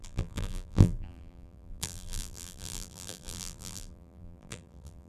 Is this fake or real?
fake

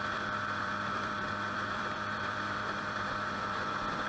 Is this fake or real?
fake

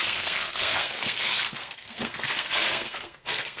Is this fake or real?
fake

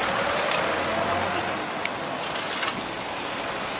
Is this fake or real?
real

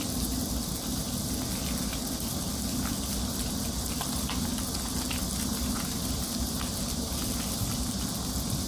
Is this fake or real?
real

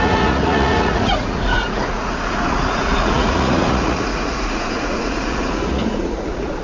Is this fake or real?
fake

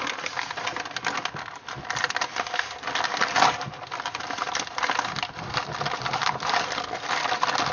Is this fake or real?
real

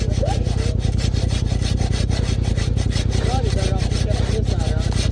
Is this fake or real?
real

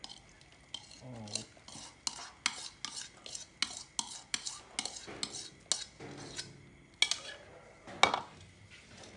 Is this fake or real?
real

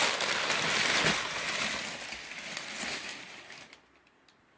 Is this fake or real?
real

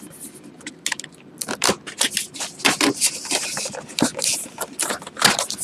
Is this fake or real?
real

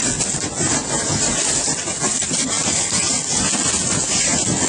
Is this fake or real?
real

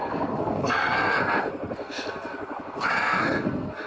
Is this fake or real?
fake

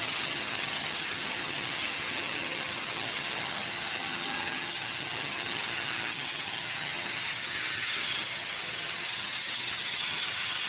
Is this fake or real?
fake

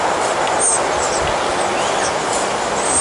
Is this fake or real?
real